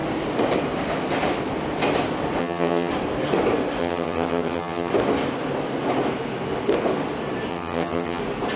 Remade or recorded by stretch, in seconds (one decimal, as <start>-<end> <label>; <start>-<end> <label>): 0.0-2.4 recorded; 2.4-2.9 remade; 2.9-3.8 recorded; 3.8-4.9 remade; 4.9-7.5 recorded; 7.5-8.2 remade; 8.2-8.6 recorded